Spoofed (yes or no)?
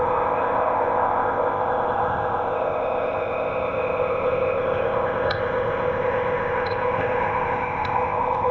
yes